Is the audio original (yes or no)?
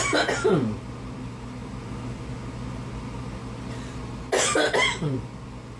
yes